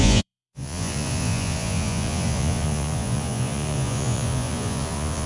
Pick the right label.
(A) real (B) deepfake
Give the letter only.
B